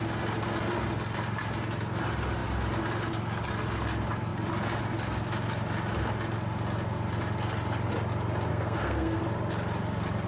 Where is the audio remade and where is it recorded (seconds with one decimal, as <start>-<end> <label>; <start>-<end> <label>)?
0.0-8.5 recorded; 8.5-9.2 remade; 9.2-10.3 recorded